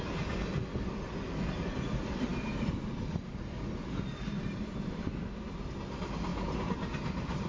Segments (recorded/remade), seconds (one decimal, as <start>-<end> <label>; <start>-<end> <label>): 0.0-7.5 recorded